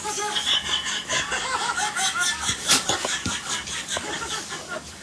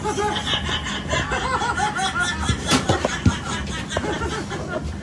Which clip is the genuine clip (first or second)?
second